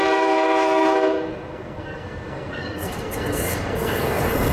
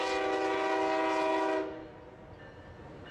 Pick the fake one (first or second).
first